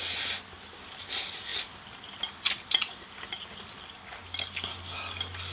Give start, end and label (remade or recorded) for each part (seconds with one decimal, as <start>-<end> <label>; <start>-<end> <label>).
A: 0.0-5.5 recorded